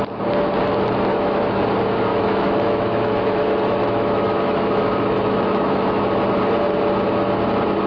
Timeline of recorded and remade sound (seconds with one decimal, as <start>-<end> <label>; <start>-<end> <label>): 0.0-1.1 recorded; 1.1-1.6 remade; 1.6-2.1 recorded; 2.1-6.0 remade; 6.0-7.9 recorded